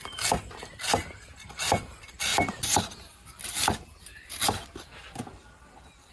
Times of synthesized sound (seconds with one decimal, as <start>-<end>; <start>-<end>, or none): none